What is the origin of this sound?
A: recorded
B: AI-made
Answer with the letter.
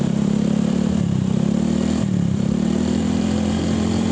B